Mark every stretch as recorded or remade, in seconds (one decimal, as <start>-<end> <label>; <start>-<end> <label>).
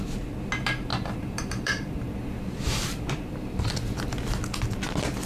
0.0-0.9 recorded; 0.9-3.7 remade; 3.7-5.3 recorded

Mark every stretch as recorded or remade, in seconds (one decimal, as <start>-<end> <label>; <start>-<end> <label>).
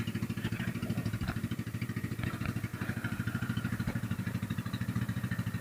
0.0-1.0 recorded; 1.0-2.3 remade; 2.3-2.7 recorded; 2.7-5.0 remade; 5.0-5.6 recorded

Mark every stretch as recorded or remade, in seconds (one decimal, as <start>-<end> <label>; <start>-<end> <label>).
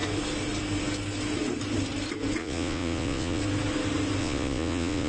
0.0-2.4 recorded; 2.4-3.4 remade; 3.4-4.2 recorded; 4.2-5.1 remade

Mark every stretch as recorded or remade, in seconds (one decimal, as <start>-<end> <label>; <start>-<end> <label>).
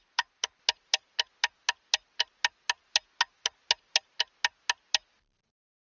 0.0-5.9 recorded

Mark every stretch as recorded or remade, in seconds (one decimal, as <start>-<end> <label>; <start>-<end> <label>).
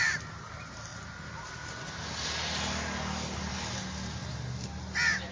0.0-0.9 remade; 0.9-3.5 recorded; 3.5-4.2 remade; 4.2-5.3 recorded